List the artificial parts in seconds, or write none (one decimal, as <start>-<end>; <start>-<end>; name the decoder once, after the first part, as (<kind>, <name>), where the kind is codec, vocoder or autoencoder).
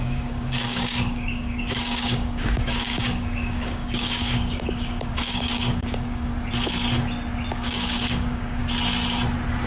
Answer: 0.0-6.3 (codec, DAC); 7.5-8.6